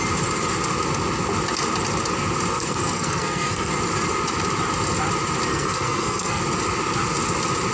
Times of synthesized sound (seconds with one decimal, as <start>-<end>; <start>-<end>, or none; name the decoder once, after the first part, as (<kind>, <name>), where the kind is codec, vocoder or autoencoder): 2.5-3.7 (codec, SNAC); 5.5-6.4